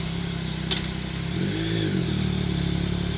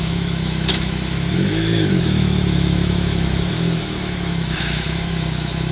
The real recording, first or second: first